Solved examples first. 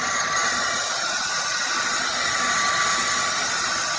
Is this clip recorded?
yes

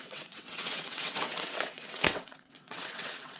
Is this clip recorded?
no